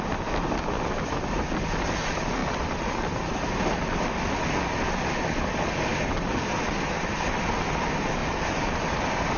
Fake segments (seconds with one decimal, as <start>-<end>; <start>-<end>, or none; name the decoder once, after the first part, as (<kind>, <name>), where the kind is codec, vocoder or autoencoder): 8.2-9.0 (vocoder, BigVGAN v2)